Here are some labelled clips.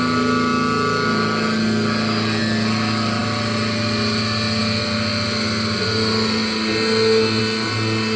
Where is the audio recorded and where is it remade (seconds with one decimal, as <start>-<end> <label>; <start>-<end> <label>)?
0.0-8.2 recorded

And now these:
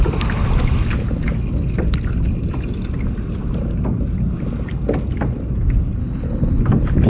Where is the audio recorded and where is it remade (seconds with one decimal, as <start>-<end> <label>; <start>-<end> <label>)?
0.0-6.0 recorded; 6.0-6.6 remade; 6.6-7.1 recorded

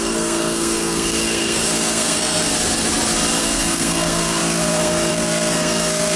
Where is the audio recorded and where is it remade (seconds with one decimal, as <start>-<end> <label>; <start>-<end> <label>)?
0.0-2.5 remade; 2.5-3.4 recorded; 3.4-6.2 remade

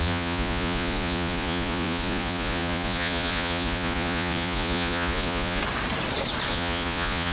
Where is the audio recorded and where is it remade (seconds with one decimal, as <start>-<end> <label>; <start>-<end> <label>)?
0.0-5.6 remade; 5.6-6.5 recorded; 6.5-7.3 remade

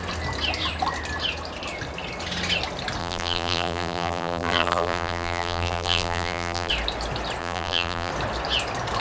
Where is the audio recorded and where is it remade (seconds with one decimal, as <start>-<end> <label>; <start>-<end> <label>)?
0.0-3.0 recorded; 3.0-6.7 remade; 6.7-7.4 recorded; 7.4-8.1 remade; 8.1-9.0 recorded